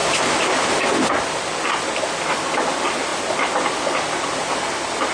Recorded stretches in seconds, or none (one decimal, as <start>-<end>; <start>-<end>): 0.0-5.1